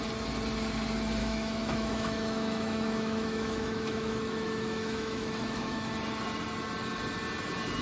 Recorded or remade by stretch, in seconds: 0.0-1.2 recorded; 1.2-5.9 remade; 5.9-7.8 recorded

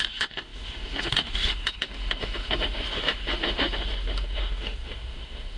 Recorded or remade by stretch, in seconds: 0.0-5.6 remade

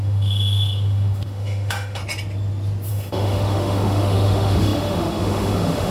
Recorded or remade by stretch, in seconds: 0.0-2.0 remade; 2.0-2.9 recorded; 2.9-5.9 remade

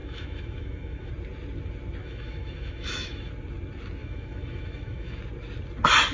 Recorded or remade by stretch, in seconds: 0.0-1.1 remade; 1.1-2.0 recorded; 2.0-3.3 remade; 3.3-4.0 recorded; 4.0-5.2 remade; 5.2-6.1 recorded

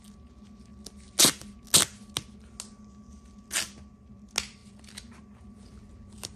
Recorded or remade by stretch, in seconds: 0.0-6.4 recorded

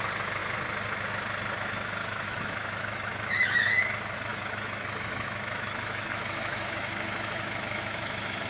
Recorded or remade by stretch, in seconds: 0.0-2.0 recorded; 2.0-3.8 remade; 3.8-4.3 recorded; 4.3-8.5 remade